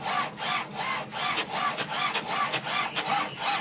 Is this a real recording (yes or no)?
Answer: yes